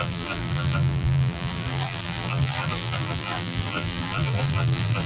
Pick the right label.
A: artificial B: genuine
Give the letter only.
A